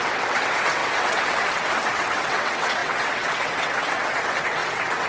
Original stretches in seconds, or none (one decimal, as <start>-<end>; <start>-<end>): none